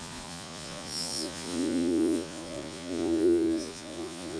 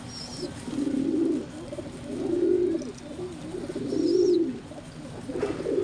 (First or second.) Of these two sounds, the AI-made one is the first